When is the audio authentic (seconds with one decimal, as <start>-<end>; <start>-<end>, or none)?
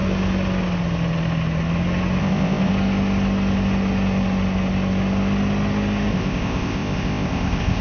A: 0.0-2.2; 2.7-6.1